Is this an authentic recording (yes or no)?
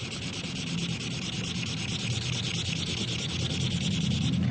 yes